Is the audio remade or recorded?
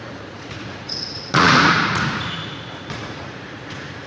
remade